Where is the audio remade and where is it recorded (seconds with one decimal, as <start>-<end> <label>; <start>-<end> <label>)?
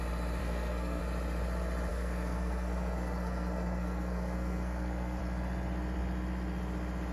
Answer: 0.0-0.4 recorded; 0.4-1.0 remade; 1.0-1.9 recorded; 1.9-5.2 remade; 5.2-7.1 recorded